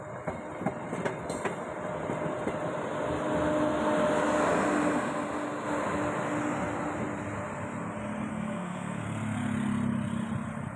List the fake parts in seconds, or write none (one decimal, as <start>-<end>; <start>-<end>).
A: 8.3-9.0